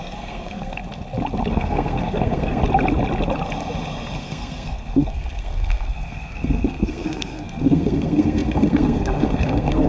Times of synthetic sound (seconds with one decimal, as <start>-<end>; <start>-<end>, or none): 0.0-0.8; 1.5-2.6; 4.2-9.9